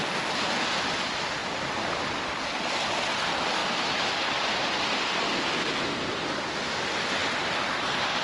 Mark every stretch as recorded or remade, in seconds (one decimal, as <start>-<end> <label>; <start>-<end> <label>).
0.0-8.2 recorded